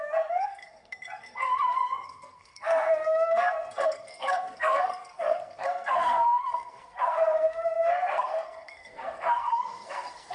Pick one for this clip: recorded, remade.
remade